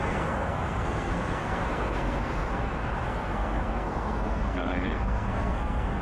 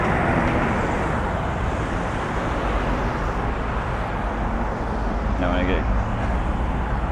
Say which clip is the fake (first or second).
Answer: first